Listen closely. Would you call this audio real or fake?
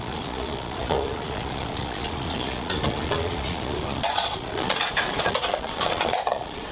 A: fake